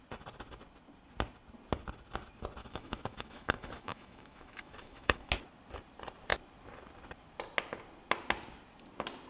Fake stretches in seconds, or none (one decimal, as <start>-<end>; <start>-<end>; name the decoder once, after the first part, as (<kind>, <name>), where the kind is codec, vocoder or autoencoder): 2.6-5.3 (autoencoder, DAC-VAE)